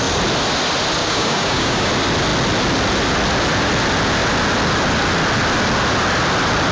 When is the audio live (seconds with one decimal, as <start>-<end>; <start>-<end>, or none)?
0.0-1.0; 1.9-6.7